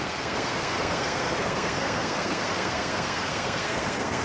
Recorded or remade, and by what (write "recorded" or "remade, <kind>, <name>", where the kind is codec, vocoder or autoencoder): remade, codec, SNAC